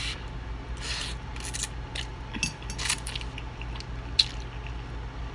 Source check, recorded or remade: recorded